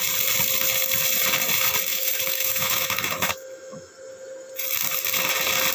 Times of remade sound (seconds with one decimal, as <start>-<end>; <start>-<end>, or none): 1.9-3.9